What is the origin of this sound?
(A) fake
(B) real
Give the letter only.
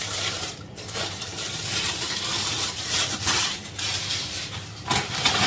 A